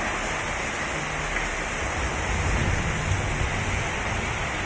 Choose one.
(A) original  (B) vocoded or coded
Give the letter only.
A